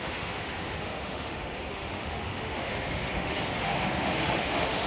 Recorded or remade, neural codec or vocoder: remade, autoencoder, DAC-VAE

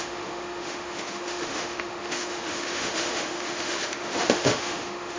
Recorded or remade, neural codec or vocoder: remade, autoencoder, DAC-VAE